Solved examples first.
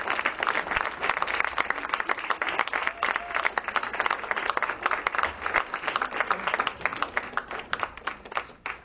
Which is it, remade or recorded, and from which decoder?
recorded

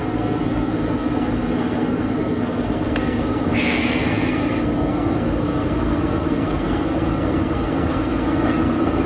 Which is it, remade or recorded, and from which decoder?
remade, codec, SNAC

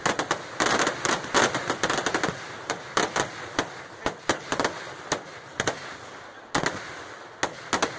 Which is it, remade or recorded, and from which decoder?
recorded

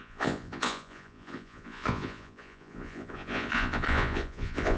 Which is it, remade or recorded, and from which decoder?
remade, vocoder, Vocos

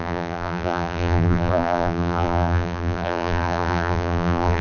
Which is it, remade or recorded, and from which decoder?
remade, vocoder, BigVGAN v2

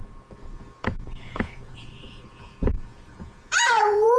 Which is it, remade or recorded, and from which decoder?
remade, vocoder, Vocos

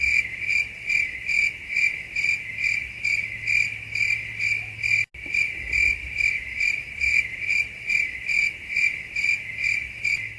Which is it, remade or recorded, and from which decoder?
recorded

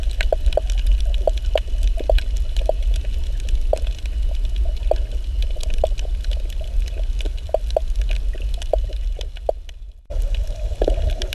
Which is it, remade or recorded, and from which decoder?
recorded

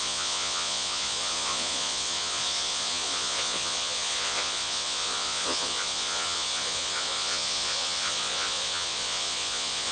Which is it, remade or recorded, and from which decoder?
remade, vocoder, Vocos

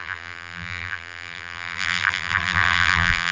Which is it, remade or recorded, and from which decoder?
remade, vocoder, BigVGAN v2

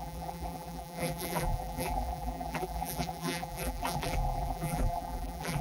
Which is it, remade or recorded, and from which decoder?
remade, vocoder, BigVGAN v2